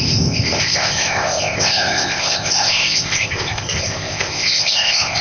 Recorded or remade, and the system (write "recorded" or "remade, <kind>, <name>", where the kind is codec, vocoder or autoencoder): remade, codec, ZipCodec